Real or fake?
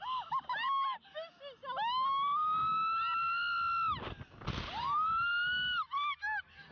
real